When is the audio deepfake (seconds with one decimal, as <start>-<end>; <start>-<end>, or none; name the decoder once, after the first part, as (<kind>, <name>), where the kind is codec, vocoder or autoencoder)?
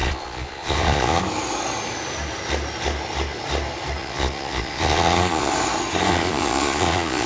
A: 0.0-1.2 (vocoder, Vocos); 4.0-5.5; 6.1-7.3